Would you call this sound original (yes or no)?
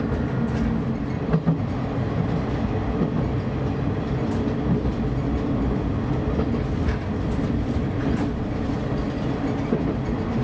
yes